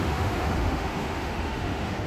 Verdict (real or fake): fake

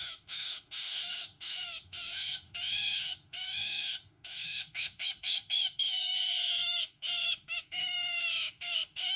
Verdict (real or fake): fake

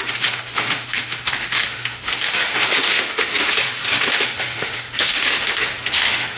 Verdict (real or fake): fake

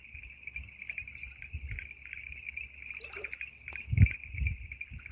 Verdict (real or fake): real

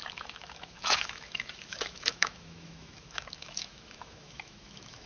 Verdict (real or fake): fake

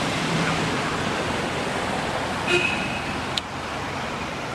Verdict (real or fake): real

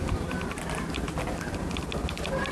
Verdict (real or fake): real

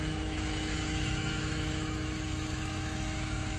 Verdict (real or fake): fake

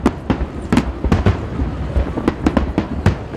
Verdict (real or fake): real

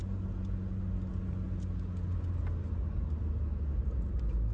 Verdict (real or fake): real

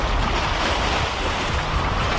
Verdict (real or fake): real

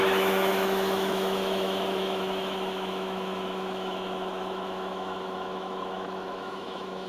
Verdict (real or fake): fake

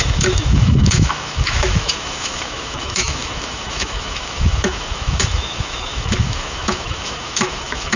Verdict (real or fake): fake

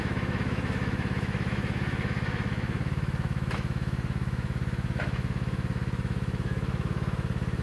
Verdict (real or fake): fake